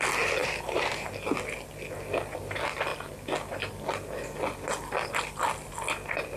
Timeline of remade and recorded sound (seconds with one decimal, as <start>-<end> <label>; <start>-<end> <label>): 0.0-0.4 recorded; 0.4-1.1 remade; 1.1-6.4 recorded